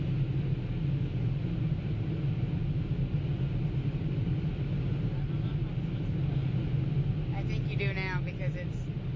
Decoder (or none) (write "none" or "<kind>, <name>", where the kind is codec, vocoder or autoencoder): none